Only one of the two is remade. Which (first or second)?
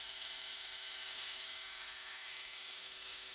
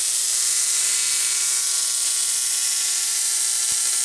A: first